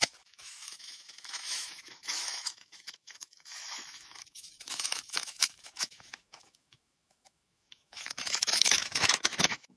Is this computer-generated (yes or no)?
yes